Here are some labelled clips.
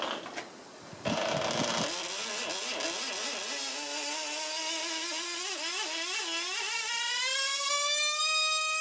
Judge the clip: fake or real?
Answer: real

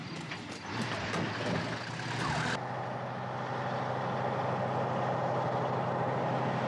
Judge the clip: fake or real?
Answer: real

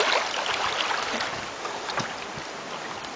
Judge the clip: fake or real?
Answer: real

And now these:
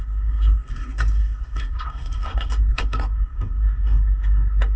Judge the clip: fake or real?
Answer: fake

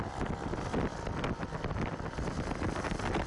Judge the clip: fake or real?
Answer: real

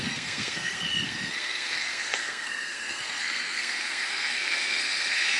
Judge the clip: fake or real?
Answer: fake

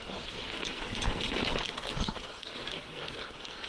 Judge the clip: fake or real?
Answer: fake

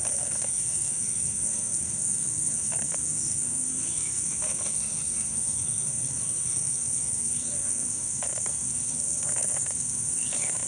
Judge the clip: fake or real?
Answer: fake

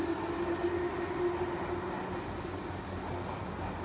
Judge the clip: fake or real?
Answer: real